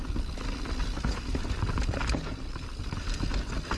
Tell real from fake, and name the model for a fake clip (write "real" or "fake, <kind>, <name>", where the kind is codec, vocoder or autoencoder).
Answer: real